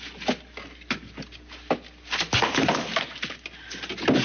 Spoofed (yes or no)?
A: no